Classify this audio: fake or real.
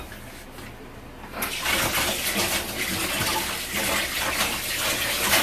real